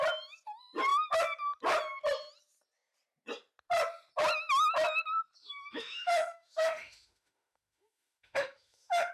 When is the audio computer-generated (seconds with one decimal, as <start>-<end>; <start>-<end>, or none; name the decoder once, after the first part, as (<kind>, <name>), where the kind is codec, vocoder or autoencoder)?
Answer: 5.4-9.1 (autoencoder, DAC-VAE)